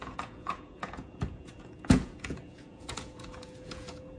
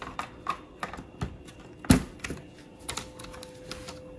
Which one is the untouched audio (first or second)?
second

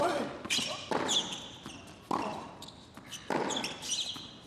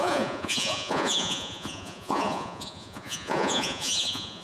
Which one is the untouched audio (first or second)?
first